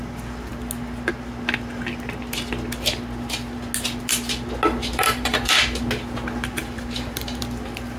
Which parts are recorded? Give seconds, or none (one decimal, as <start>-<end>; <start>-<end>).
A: 0.0-4.8; 5.8-6.6; 7.4-8.0